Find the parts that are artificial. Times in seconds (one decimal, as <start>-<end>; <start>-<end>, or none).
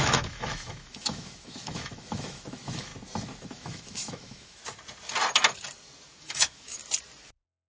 0.0-2.9; 3.4-4.6; 6.2-6.8